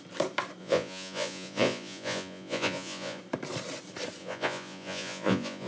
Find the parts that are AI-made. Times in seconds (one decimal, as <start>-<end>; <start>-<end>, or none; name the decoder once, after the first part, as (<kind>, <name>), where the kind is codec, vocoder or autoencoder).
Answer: 0.6-3.2 (vocoder, Vocos); 4.2-5.7